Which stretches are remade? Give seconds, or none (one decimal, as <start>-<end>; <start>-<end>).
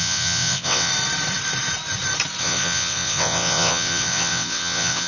0.0-0.9; 2.4-5.1